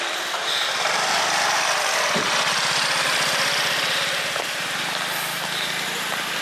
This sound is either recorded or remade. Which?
recorded